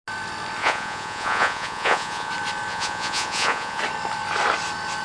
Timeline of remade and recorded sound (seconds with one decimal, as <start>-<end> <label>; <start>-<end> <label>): 0.0-0.6 recorded; 0.6-2.3 remade; 2.3-2.7 recorded; 2.7-3.8 remade; 3.8-5.0 recorded